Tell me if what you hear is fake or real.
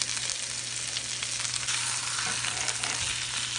real